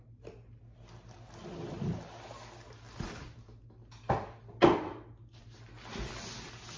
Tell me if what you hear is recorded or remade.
recorded